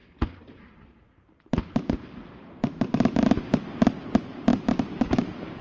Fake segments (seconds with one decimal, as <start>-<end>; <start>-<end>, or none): 0.0-3.3; 4.5-5.6

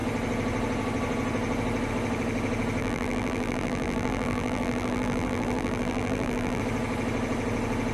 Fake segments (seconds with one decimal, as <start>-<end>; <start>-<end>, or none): 2.8-6.6

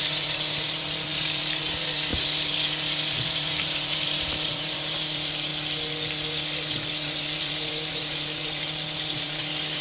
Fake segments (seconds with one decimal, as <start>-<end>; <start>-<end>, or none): 0.0-5.5; 6.9-9.8

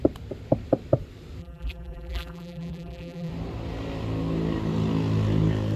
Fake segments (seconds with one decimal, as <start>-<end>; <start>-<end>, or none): 1.4-3.3

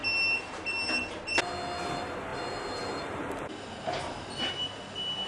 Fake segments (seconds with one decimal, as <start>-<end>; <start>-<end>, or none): 2.3-4.6

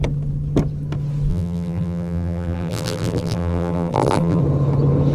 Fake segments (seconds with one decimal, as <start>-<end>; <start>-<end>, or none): 1.3-4.4

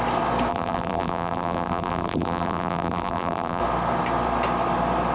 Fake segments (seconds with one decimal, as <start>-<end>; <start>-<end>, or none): 0.5-3.6